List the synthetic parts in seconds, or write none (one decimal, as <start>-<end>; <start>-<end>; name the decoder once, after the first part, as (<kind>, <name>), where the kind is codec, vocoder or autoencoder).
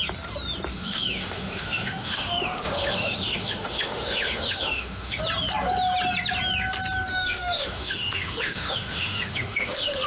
0.7-5.2 (autoencoder, DAC-VAE); 7.1-10.1